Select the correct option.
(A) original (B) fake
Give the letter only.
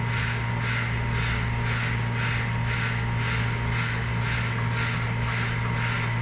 A